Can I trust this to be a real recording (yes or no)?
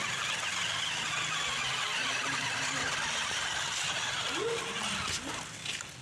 yes